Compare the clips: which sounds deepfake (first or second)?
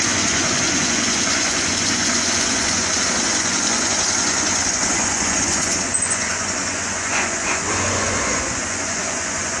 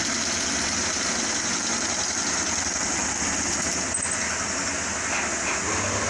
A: first